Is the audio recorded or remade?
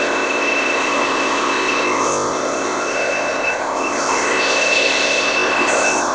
remade